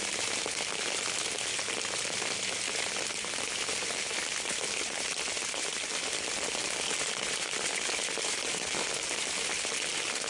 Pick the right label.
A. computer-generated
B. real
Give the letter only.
B